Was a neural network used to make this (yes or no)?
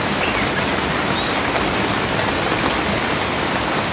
no